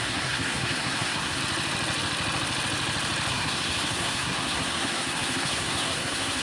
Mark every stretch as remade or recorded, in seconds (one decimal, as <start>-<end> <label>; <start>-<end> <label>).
0.0-1.4 remade; 1.4-3.3 recorded; 3.3-6.4 remade